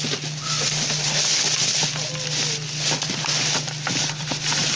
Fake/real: real